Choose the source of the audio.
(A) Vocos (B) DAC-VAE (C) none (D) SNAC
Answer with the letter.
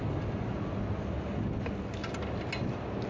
C